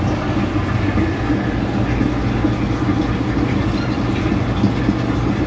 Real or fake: real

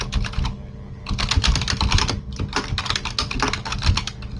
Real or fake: real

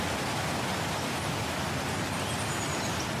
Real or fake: real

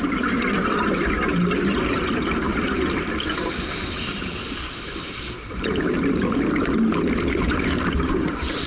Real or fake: fake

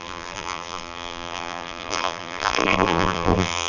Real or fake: fake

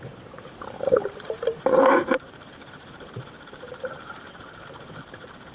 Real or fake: fake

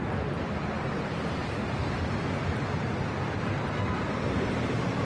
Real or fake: fake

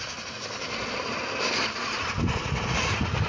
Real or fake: real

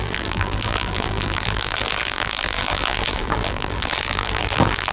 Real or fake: fake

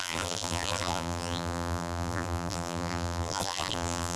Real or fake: fake